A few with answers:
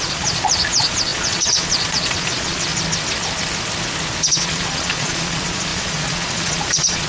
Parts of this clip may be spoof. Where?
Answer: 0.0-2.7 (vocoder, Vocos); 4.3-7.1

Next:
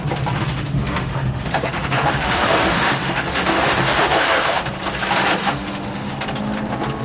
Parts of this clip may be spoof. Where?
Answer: 0.4-4.6 (autoencoder, DAC-VAE); 5.4-6.1

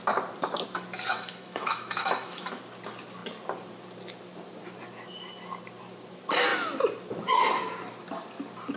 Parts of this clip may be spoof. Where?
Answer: 1.1-2.6 (autoencoder, DAC-VAE)

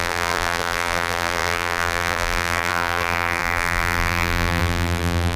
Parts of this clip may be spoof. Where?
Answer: 0.0-5.4 (vocoder, BigVGAN v2)

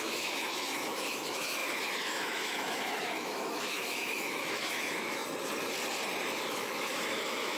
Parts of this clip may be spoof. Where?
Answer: 0.0-5.2 (autoencoder, DAC-VAE); 6.2-7.6

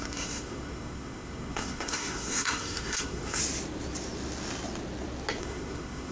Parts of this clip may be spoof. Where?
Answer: 0.0-3.4 (codec, SNAC); 5.4-6.1

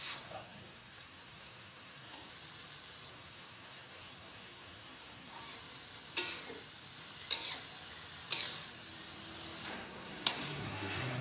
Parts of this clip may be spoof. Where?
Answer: 0.0-2.3 (codec, SNAC); 3.1-5.4; 9.7-11.2

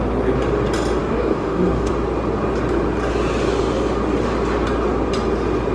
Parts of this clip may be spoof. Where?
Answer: 1.0-1.9 (codec, DAC)